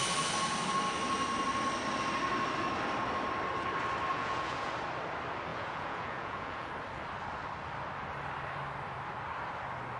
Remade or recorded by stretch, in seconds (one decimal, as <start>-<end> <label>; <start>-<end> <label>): 0.0-4.1 recorded; 4.1-4.7 remade; 4.7-5.5 recorded; 5.5-6.7 remade; 6.7-10.0 recorded